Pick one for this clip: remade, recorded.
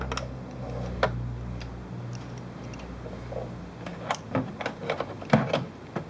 recorded